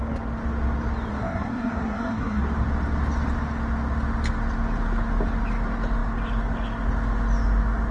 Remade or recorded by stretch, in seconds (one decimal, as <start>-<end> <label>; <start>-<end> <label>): 0.0-1.1 recorded; 1.1-2.4 remade; 2.4-7.9 recorded